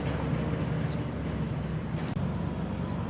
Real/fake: real